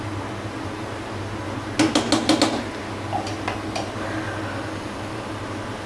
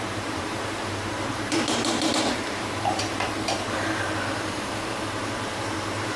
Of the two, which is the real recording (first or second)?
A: first